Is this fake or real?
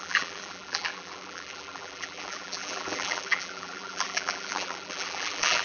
fake